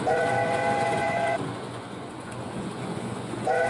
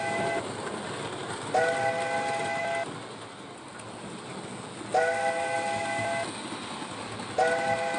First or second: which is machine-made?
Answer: first